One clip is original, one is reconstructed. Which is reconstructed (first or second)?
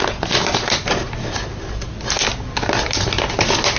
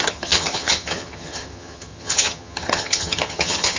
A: second